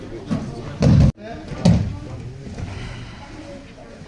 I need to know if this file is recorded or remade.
recorded